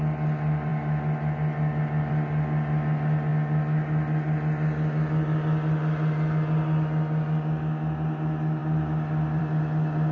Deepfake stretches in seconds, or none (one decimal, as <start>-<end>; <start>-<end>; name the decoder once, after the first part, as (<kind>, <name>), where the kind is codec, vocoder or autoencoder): none